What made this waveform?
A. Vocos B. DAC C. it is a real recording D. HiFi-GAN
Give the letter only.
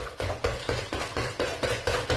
A